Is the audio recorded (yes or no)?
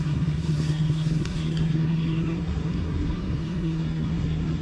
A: no